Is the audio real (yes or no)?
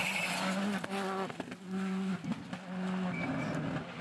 yes